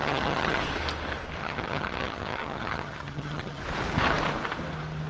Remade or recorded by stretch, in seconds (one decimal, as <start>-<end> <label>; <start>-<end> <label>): 0.0-0.6 remade; 0.6-1.4 recorded; 1.4-3.6 remade; 3.6-5.1 recorded